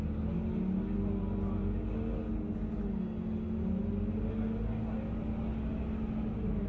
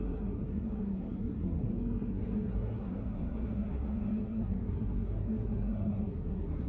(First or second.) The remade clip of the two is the second